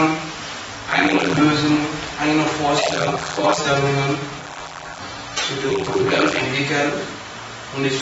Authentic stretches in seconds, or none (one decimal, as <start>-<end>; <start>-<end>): 0.0-0.9; 1.4-2.8; 3.6-4.4; 5.0-5.7; 6.4-8.0